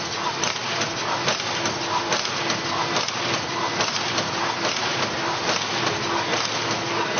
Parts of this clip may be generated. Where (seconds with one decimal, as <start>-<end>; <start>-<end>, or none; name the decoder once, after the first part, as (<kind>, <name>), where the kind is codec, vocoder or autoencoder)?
none